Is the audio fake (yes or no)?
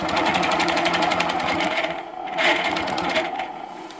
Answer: yes